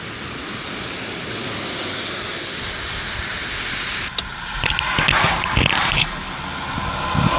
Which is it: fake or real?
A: real